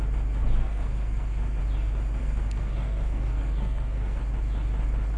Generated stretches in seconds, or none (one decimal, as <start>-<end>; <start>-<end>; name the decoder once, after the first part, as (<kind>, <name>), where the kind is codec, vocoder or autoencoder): 0.6-1.6 (codec, SNAC); 2.2-4.2